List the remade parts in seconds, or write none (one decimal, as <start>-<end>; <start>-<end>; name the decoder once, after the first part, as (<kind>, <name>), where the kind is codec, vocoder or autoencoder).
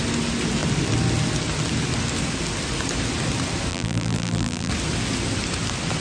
3.7-4.7 (vocoder, BigVGAN v2)